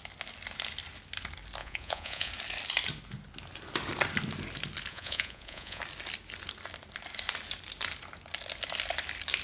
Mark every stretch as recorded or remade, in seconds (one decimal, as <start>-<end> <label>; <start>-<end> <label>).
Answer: 0.0-1.6 recorded; 1.6-2.3 remade; 2.3-4.9 recorded; 4.9-5.8 remade; 5.8-9.4 recorded